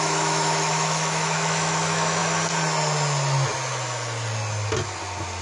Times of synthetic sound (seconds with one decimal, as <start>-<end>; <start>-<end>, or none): 0.0-2.2